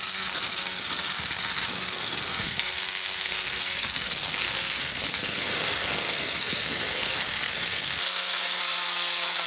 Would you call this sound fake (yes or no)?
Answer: yes